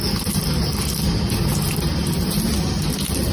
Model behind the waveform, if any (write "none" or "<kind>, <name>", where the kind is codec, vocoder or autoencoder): none